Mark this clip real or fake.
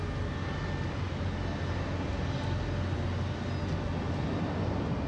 real